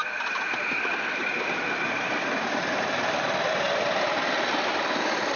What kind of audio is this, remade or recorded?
recorded